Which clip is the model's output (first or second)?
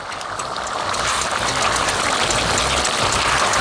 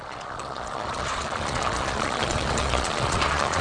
second